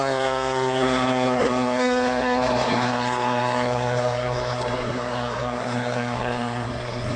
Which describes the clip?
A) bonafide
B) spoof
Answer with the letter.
B